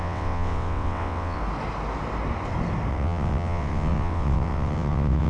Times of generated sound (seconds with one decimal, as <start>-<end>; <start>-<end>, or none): 0.0-1.4; 2.9-5.3